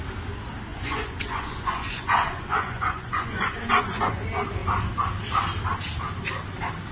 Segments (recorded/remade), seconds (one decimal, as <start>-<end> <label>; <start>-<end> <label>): 0.0-0.7 recorded; 0.7-4.1 remade; 4.1-6.9 recorded